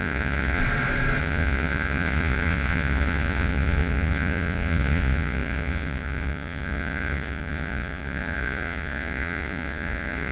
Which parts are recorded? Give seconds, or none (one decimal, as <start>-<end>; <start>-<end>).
0.6-1.2